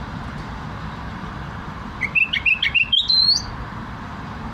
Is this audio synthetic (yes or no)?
yes